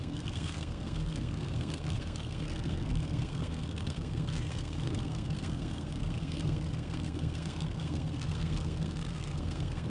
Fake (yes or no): yes